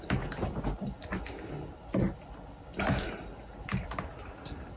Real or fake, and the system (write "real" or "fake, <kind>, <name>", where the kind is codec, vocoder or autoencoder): real